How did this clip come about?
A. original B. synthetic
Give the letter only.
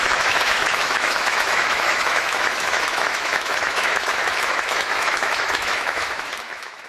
B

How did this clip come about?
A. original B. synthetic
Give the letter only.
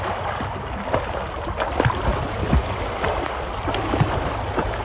A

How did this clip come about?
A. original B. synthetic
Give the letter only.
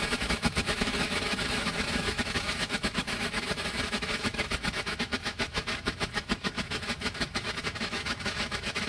B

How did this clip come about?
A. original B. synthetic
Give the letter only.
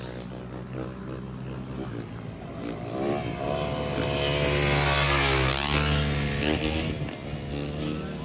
A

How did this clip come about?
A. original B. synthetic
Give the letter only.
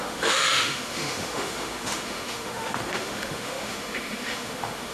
B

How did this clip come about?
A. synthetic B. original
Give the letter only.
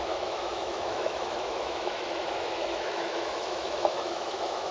A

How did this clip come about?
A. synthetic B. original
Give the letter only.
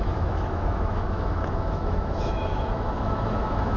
A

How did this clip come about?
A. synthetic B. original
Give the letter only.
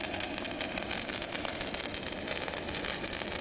B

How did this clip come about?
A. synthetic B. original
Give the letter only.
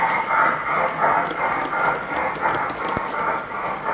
B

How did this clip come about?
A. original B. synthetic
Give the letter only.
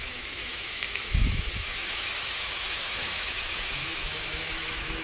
B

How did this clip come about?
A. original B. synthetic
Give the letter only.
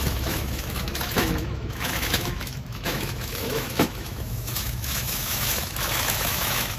B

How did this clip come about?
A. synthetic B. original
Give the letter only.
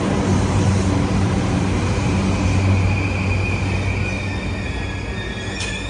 B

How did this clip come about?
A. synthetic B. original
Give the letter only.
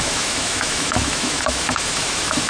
A